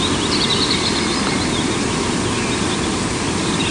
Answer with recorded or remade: remade